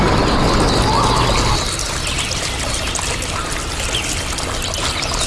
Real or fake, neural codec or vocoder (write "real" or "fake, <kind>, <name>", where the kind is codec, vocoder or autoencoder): real